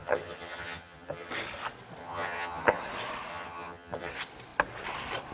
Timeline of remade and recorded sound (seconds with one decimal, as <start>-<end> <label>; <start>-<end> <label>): 0.0-1.3 remade; 1.3-2.0 recorded; 2.0-2.8 remade; 2.8-3.3 recorded; 3.3-4.1 remade; 4.1-5.3 recorded